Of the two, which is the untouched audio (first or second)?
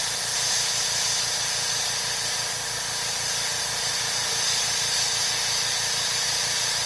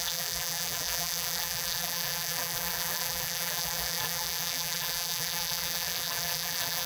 first